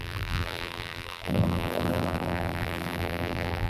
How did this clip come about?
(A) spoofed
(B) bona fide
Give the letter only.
A